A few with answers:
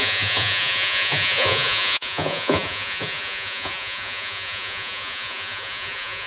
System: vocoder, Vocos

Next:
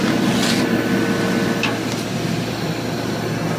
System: none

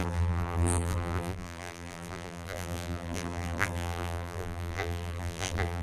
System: vocoder, BigVGAN v2